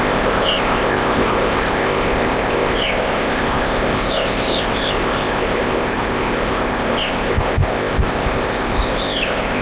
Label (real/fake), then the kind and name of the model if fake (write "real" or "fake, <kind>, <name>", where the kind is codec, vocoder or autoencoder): fake, codec, ZipCodec